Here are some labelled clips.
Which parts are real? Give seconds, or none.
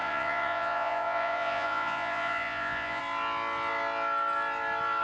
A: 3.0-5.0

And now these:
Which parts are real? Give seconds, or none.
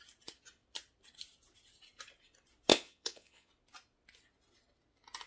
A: 0.0-2.7; 3.5-5.3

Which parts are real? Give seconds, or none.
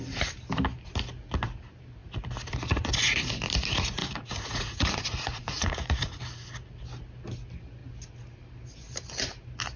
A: 0.0-4.0; 6.2-9.8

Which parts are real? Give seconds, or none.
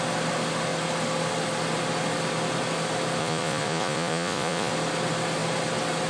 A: 0.0-3.2; 4.7-6.1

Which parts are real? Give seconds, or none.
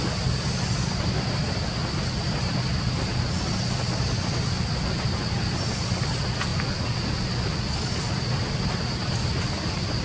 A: 0.0-10.0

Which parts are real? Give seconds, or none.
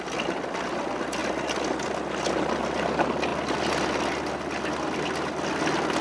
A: 0.0-6.0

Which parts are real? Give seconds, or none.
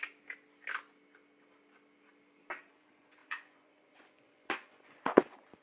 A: 0.0-2.7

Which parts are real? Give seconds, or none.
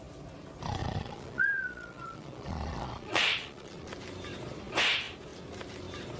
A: 0.0-0.8; 3.9-6.2